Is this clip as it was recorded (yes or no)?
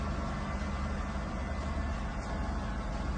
yes